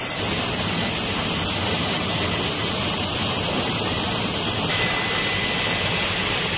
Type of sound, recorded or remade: recorded